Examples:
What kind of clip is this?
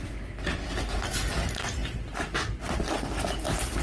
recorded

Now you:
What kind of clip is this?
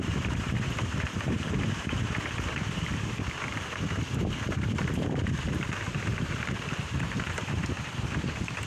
remade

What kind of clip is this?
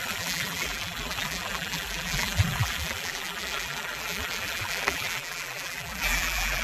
remade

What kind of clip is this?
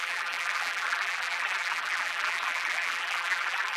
remade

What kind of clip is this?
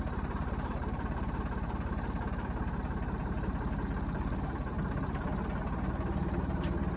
remade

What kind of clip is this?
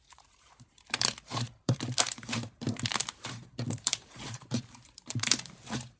remade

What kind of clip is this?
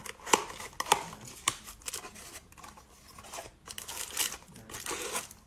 recorded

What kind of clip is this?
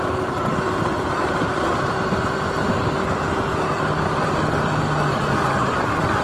recorded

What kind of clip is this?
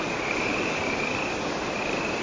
remade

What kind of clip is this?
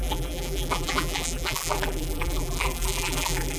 remade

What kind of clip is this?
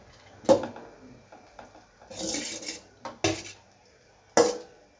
recorded